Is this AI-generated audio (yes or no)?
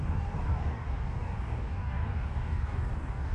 yes